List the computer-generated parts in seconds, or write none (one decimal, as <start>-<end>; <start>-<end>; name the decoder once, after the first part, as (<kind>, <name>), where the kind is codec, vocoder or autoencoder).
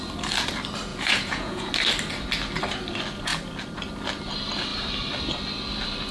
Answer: 0.9-1.7 (vocoder, Vocos)